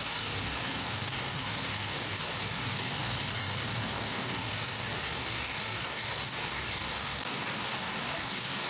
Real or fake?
fake